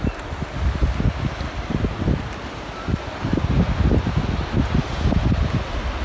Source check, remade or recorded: recorded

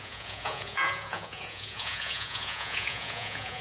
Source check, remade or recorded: remade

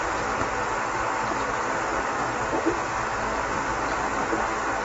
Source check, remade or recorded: recorded